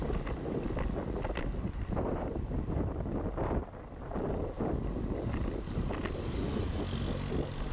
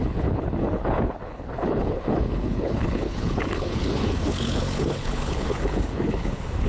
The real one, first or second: first